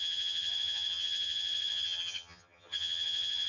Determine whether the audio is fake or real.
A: fake